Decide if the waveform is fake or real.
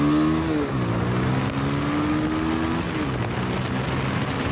real